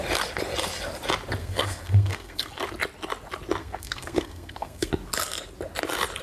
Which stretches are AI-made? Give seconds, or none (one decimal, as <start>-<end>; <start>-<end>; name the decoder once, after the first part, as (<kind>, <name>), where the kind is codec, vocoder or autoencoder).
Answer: 1.4-2.5 (codec, SNAC); 3.6-4.9